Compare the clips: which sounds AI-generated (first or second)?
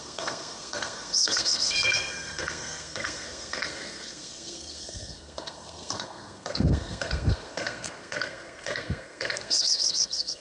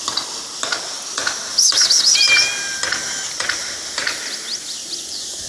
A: first